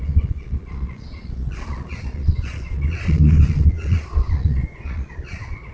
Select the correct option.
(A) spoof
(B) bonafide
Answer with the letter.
A